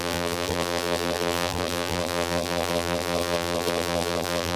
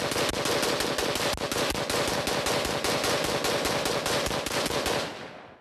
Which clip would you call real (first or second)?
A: second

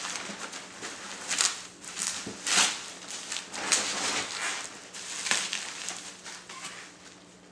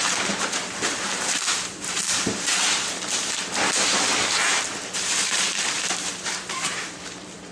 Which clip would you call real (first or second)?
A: first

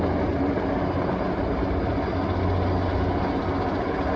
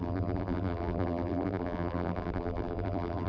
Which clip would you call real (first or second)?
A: first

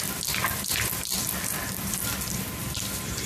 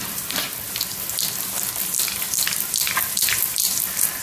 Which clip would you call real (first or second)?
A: first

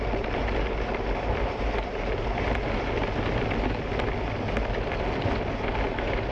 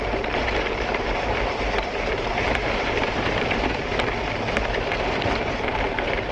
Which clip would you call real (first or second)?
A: first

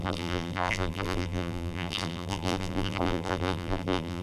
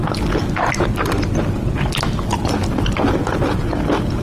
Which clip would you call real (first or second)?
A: second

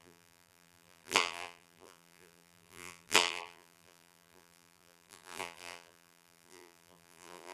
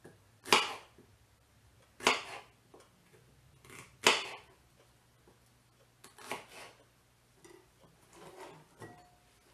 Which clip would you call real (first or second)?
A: second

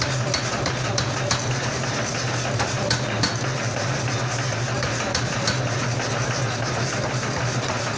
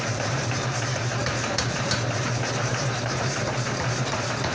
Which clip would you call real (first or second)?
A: first